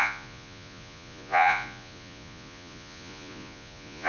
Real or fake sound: fake